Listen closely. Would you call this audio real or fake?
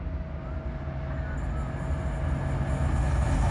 real